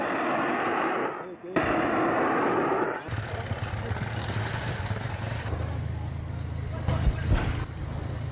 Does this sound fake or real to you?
real